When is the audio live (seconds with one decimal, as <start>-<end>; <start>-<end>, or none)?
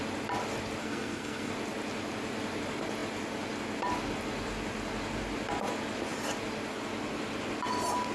0.0-0.8; 1.5-8.1